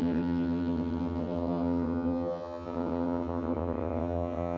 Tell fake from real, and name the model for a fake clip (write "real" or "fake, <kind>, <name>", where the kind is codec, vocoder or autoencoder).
fake, vocoder, HiFi-GAN